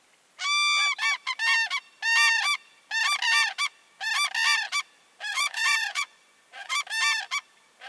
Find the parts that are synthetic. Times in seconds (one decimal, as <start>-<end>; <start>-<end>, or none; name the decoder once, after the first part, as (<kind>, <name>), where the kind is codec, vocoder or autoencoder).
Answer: 5.3-6.7 (vocoder, Vocos)